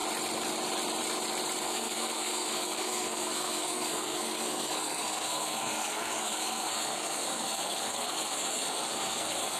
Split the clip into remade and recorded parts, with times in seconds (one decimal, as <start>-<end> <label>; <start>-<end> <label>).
0.0-1.6 recorded; 1.6-9.6 remade